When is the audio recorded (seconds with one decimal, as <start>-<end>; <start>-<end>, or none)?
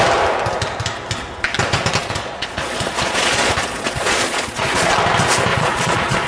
0.0-2.0; 4.9-5.5